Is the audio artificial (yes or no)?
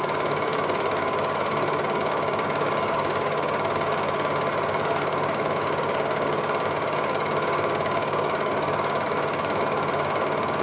yes